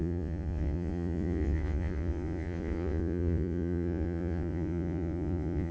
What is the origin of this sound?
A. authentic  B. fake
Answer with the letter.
B